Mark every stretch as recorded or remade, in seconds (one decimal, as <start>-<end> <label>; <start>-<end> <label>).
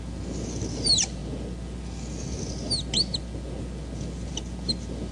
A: 0.0-5.1 recorded